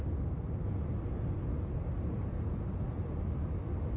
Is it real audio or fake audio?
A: fake